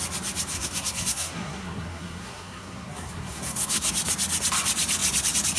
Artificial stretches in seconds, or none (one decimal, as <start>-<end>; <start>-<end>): 0.5-3.9